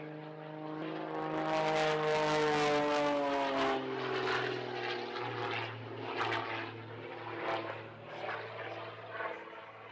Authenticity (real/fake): real